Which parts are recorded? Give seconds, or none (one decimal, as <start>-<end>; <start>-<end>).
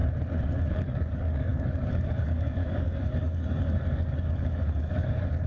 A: 0.0-0.7